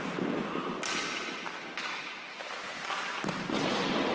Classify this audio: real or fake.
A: real